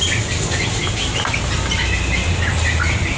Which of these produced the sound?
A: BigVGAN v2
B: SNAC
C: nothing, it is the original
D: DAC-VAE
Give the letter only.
C